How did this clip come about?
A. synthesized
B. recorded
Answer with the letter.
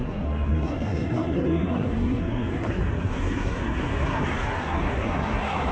A